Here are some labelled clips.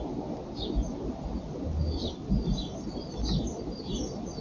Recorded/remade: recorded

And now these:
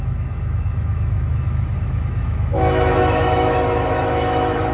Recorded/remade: remade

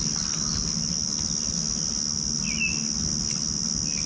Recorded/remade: recorded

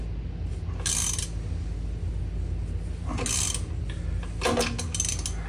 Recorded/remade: recorded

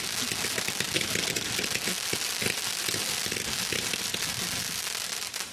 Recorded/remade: recorded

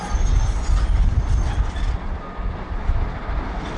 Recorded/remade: recorded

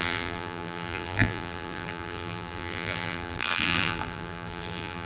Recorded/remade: remade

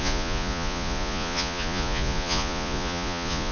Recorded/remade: remade